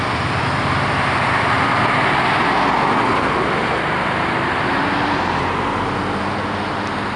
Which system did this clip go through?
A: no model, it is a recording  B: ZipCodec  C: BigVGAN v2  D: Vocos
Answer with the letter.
A